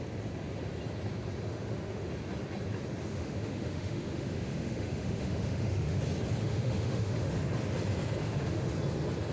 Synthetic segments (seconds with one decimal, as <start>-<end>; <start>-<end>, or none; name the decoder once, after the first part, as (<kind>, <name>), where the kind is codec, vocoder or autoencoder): 1.5-2.1 (autoencoder, DAC-VAE); 3.1-6.0; 6.4-7.3; 8.2-8.7